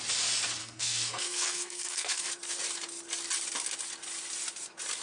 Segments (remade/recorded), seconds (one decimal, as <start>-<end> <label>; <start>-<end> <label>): 0.0-0.6 recorded; 0.6-2.3 remade; 2.3-5.0 recorded